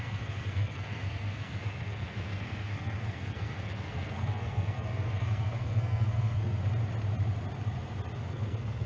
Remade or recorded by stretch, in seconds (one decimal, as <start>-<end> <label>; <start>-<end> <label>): 0.0-6.6 remade; 6.6-8.2 recorded; 8.2-8.9 remade